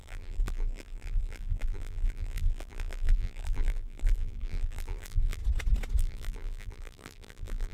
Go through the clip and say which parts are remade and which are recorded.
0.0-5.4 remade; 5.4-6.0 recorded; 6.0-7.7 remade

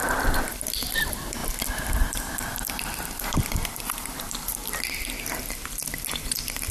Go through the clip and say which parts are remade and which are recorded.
0.0-1.4 remade; 1.4-1.9 recorded; 1.9-4.6 remade; 4.6-6.2 recorded; 6.2-6.7 remade

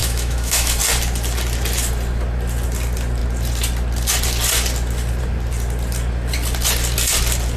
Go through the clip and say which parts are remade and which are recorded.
0.0-0.8 remade; 0.8-7.6 recorded

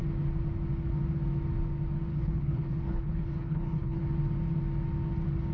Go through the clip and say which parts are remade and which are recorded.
0.0-2.1 recorded; 2.1-4.0 remade; 4.0-5.5 recorded

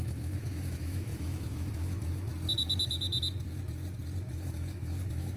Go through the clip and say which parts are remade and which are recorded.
0.0-2.3 remade; 2.3-4.3 recorded; 4.3-5.4 remade

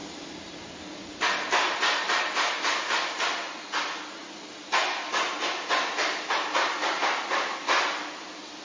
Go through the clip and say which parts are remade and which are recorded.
0.0-8.6 recorded

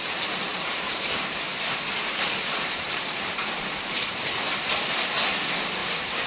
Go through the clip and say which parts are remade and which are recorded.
0.0-0.5 recorded; 0.5-4.3 remade; 4.3-5.8 recorded; 5.8-6.3 remade

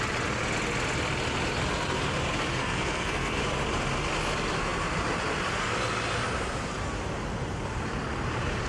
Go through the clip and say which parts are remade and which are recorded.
0.0-2.6 recorded; 2.6-3.4 remade; 3.4-8.7 recorded